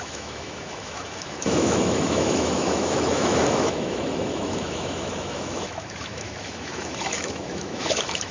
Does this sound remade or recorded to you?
remade